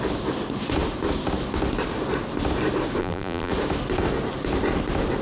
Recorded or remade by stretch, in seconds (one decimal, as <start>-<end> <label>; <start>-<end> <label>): 0.0-3.0 recorded; 3.0-3.5 remade; 3.5-5.2 recorded